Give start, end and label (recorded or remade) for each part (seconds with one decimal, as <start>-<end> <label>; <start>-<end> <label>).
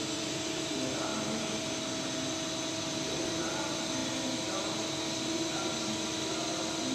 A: 0.0-6.9 recorded